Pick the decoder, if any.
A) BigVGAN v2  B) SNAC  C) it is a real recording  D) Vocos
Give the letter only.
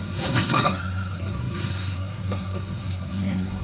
B